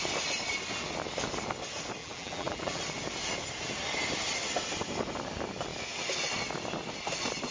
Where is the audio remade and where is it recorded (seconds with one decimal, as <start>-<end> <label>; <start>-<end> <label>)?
0.0-2.0 recorded; 2.0-2.8 remade; 2.8-7.5 recorded